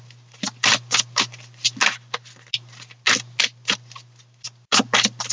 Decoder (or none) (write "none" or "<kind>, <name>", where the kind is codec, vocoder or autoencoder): none